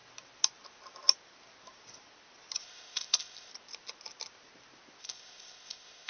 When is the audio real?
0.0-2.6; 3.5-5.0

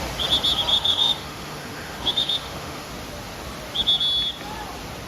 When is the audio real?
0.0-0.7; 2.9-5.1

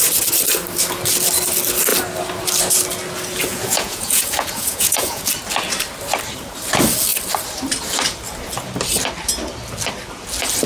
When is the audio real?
0.0-3.5; 5.3-10.7

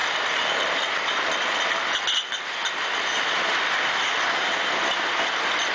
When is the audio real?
0.0-5.7

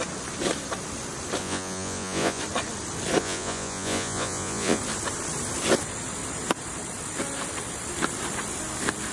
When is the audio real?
0.0-1.4; 2.4-3.2; 4.8-9.1